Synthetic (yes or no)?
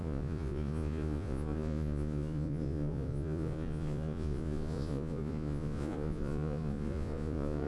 yes